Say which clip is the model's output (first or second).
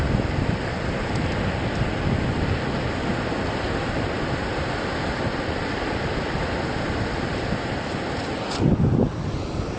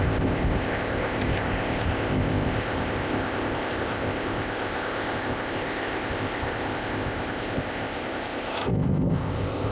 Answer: second